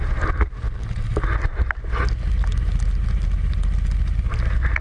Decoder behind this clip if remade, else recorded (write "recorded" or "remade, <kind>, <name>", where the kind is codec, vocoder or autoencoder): recorded